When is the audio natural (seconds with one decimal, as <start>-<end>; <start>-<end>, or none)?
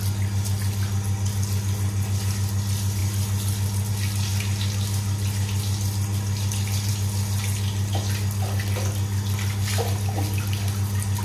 0.0-11.2